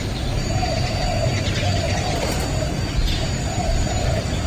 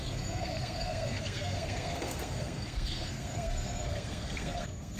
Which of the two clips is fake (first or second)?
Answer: second